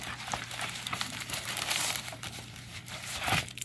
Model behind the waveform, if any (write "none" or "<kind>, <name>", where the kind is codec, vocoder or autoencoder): vocoder, BigVGAN v2